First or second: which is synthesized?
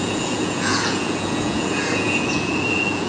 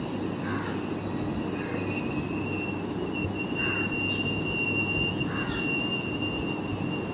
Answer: first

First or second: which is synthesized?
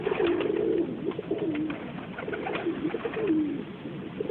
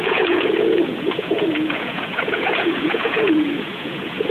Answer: second